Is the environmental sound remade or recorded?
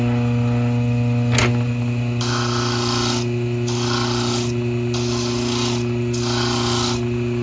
recorded